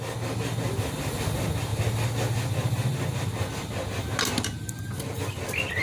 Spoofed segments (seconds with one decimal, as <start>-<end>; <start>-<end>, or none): none